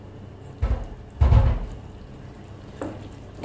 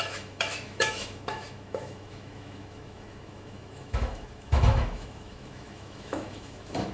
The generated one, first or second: second